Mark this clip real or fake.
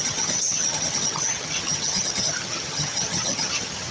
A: fake